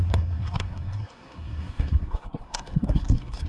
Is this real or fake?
fake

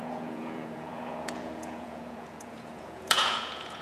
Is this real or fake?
fake